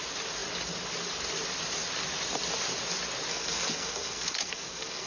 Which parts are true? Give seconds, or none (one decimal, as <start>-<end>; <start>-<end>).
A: 0.0-3.3